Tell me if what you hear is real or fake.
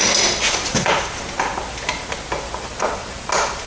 real